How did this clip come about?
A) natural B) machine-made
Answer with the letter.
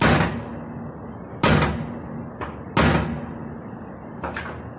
A